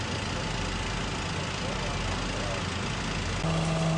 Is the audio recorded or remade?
recorded